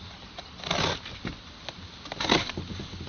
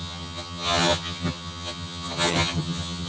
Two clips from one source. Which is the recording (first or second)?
first